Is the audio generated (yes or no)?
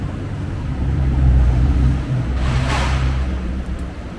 yes